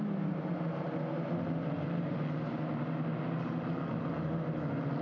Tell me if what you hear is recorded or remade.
recorded